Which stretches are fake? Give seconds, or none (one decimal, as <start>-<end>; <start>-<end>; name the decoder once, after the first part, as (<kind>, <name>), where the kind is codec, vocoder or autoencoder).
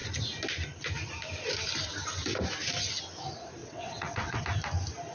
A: 3.6-4.4 (vocoder, WaveNeXt)